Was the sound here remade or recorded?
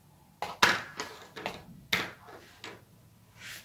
recorded